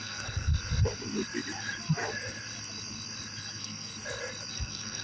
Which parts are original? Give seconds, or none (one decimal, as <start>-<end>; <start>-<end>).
0.5-3.5; 3.9-4.5